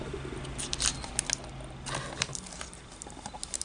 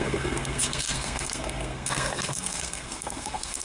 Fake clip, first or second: second